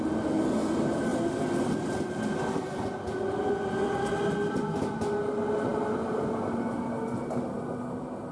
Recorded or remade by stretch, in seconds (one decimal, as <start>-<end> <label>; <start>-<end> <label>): 0.0-8.3 recorded